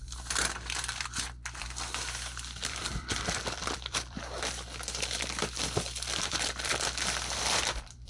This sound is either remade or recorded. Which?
remade